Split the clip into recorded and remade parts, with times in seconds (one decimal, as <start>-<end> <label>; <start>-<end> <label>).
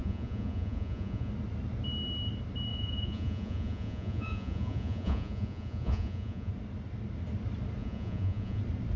0.0-1.3 remade; 1.3-2.7 recorded; 2.7-6.5 remade; 6.5-7.8 recorded; 7.8-8.6 remade; 8.6-9.0 recorded